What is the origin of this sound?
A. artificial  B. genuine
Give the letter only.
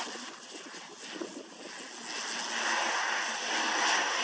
B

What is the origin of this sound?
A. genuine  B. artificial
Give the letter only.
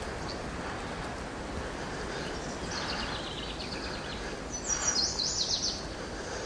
A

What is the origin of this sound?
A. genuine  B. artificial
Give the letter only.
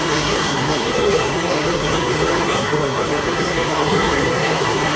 B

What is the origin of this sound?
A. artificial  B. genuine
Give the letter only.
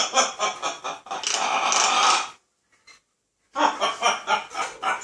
B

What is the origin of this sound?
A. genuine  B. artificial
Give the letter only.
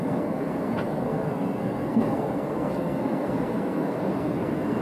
B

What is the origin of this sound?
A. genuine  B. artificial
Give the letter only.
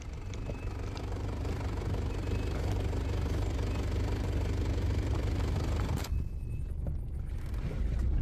A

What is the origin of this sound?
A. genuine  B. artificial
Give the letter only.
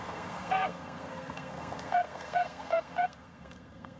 B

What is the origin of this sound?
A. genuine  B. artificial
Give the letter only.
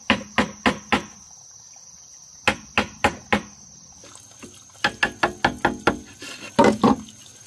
A